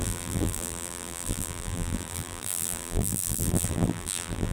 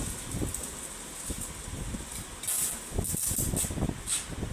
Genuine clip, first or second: second